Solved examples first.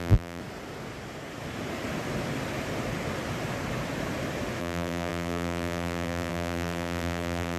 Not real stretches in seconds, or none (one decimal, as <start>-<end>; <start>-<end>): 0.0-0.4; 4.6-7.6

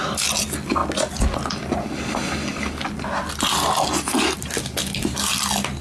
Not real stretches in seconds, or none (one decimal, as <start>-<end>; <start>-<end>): none

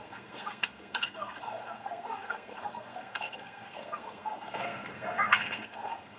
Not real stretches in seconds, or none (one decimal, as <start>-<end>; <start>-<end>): 0.0-6.2

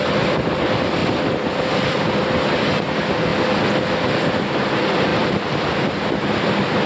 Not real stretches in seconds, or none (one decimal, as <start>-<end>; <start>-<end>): none

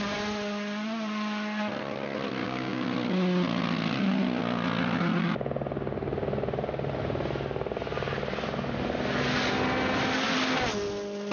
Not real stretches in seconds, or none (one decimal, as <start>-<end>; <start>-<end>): 2.4-2.9